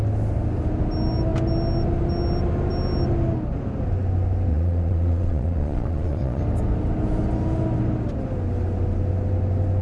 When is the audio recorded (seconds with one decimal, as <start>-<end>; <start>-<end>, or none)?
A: 0.0-4.5; 6.4-9.8